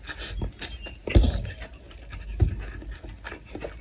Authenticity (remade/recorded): recorded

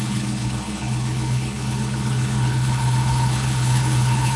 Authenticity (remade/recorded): remade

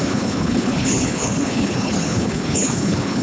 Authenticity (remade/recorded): remade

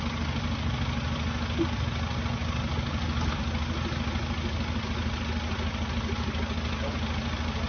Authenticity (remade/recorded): recorded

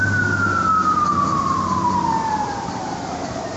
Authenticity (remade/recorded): recorded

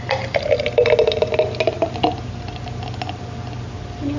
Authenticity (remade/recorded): recorded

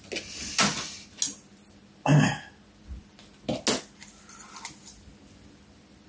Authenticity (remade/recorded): recorded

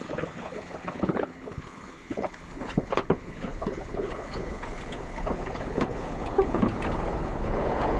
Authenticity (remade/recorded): remade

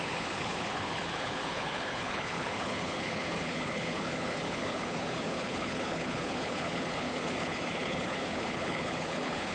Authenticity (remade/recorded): remade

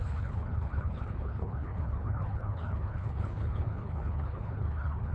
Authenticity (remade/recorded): remade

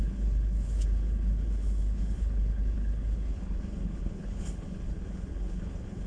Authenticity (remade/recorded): remade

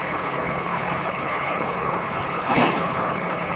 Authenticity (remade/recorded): remade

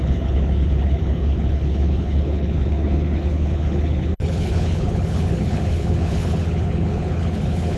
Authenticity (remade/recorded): remade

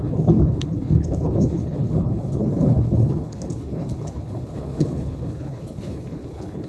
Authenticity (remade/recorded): remade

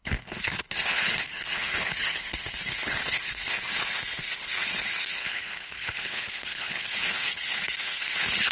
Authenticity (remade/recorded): remade